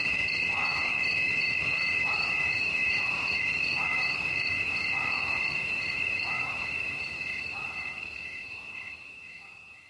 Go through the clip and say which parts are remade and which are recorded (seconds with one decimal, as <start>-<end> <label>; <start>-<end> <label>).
0.0-9.9 remade